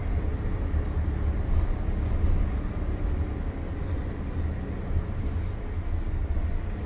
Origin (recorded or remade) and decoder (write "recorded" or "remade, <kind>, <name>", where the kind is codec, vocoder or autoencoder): recorded